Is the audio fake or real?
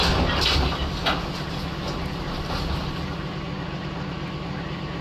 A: real